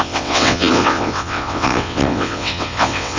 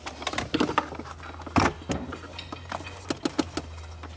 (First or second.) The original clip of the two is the second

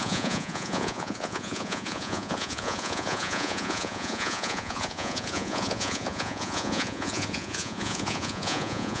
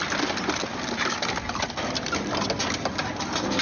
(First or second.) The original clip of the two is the second